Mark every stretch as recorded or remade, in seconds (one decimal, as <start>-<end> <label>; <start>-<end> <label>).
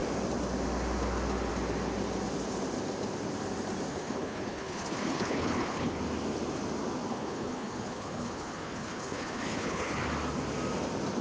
0.0-3.9 recorded; 3.9-6.0 remade; 6.0-7.1 recorded; 7.1-10.0 remade; 10.0-11.2 recorded